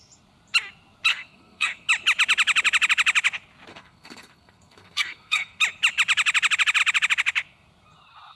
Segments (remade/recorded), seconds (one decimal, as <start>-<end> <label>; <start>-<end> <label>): 0.0-1.1 recorded; 1.1-1.9 remade; 1.9-3.7 recorded; 3.7-5.6 remade; 5.6-8.4 recorded